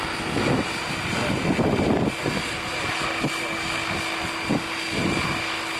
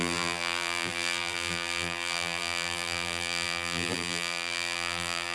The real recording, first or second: first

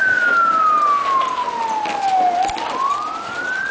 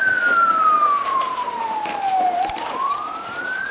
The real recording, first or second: first